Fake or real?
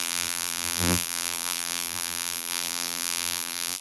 fake